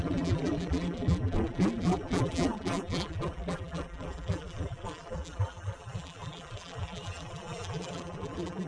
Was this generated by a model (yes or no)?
yes